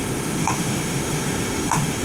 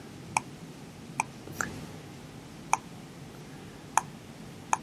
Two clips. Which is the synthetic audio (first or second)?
first